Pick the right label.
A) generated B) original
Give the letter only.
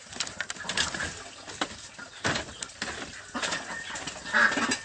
B